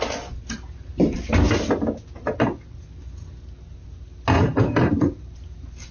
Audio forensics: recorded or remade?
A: recorded